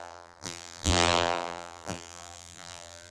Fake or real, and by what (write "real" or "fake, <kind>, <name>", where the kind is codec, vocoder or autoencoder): fake, vocoder, BigVGAN v2